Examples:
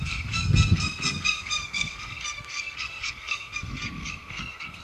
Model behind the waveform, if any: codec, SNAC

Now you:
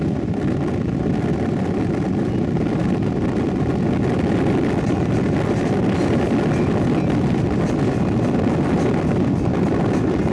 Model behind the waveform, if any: none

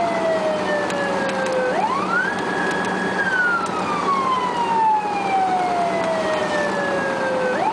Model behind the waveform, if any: none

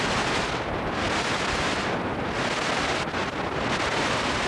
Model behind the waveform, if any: none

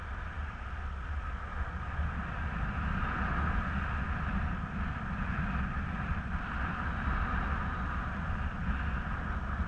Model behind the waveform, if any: none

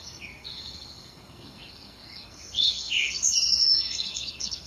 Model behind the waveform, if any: codec, SNAC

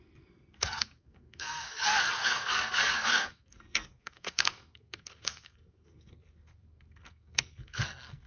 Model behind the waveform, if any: codec, SNAC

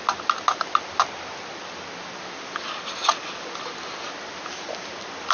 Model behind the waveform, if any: none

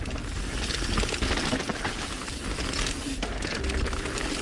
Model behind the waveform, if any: none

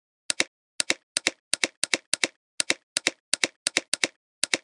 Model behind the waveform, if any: none